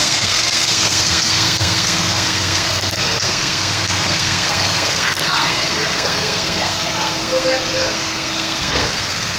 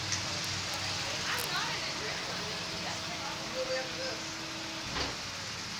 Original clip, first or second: second